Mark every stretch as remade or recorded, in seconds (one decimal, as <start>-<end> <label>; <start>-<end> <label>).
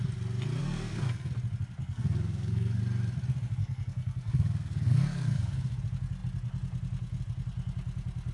0.0-0.6 recorded; 0.6-1.3 remade; 1.3-1.8 recorded; 1.8-2.8 remade; 2.8-3.6 recorded; 3.6-5.8 remade; 5.8-8.3 recorded